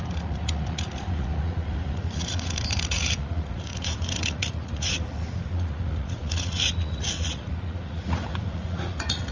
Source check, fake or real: fake